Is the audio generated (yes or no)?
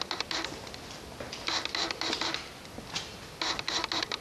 no